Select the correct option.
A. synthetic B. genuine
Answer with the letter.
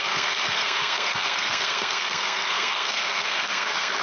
A